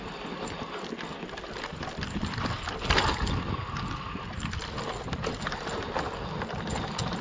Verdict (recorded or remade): recorded